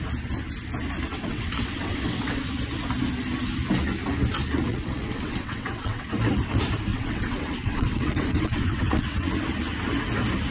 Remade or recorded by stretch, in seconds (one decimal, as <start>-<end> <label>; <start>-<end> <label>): 0.0-1.1 recorded; 1.1-2.5 remade; 2.5-4.7 recorded; 4.7-6.1 remade; 6.1-6.9 recorded; 6.9-9.3 remade; 9.3-10.5 recorded